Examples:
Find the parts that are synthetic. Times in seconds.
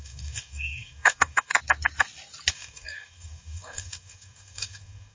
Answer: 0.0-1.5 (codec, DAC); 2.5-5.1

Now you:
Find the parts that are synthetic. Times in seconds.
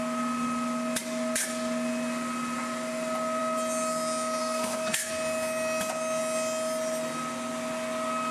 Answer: 4.4-5.1 (codec, SNAC)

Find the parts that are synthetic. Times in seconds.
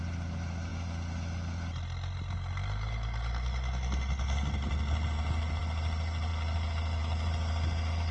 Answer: none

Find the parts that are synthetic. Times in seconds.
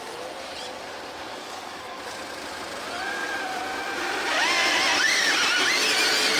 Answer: 1.3-2.0 (codec, DAC)